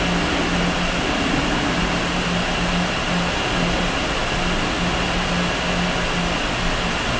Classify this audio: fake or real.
real